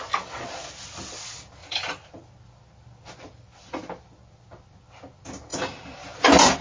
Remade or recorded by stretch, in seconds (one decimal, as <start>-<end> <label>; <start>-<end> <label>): 0.0-1.6 recorded; 1.6-2.1 remade; 2.1-6.6 recorded